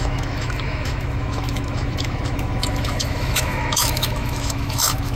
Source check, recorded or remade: remade